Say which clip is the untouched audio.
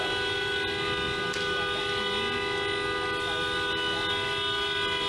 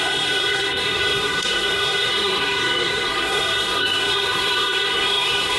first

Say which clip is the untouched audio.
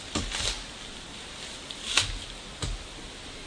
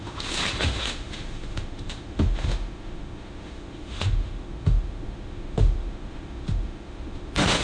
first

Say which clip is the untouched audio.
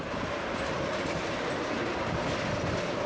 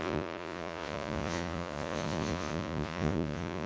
first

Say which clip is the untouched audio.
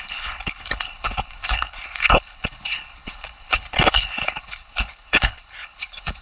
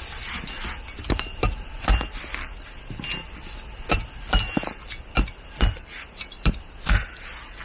second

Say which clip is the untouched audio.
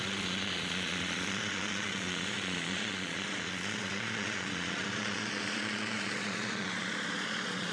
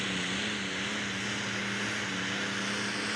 second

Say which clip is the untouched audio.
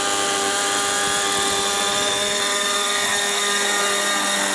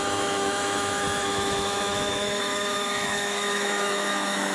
first